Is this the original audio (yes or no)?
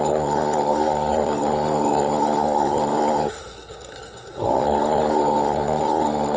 no